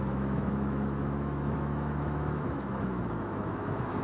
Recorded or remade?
remade